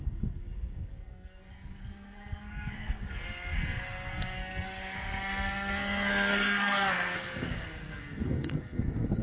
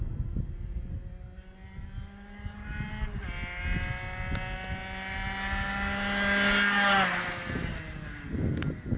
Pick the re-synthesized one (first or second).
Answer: first